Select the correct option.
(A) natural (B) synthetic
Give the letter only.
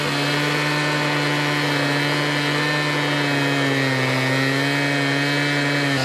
A